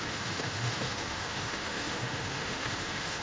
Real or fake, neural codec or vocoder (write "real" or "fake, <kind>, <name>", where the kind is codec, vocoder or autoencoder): fake, autoencoder, DAC-VAE